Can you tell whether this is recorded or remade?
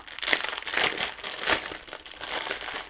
recorded